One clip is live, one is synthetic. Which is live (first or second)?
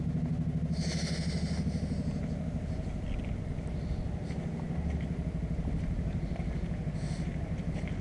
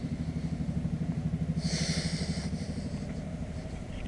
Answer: first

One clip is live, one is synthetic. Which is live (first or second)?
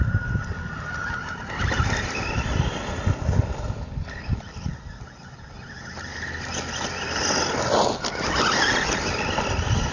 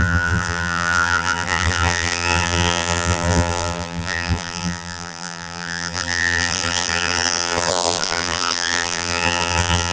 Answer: first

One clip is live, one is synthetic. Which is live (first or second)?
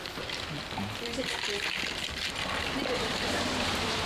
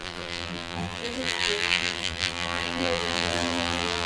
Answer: first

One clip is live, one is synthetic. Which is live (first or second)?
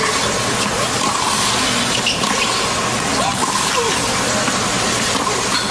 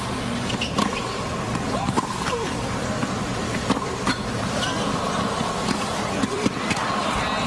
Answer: first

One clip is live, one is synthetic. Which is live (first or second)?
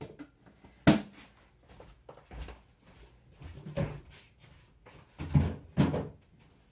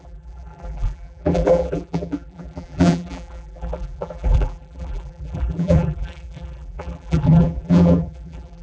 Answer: first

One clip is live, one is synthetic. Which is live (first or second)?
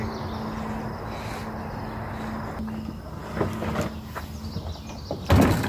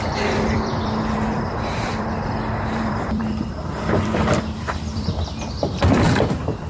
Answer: first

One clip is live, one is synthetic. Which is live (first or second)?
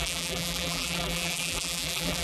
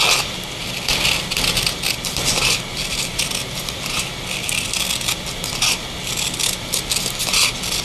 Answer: second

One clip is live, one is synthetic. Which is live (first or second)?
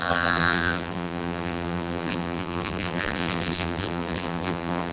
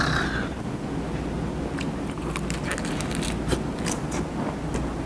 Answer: second